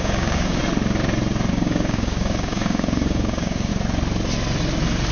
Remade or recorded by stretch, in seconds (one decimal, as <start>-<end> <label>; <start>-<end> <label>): 0.0-0.6 remade; 0.6-1.5 recorded; 1.5-3.7 remade; 3.7-5.1 recorded